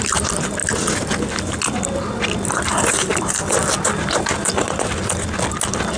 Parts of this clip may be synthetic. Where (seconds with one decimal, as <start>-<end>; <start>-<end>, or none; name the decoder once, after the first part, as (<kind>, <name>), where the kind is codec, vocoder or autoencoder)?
none